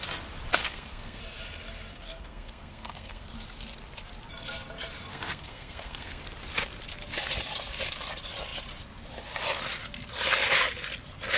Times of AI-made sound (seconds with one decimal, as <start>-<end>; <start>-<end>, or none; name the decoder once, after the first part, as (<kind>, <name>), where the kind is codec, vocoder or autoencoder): 0.6-1.2 (codec, SNAC); 1.9-3.3; 5.1-6.2